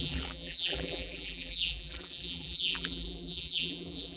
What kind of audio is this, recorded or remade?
remade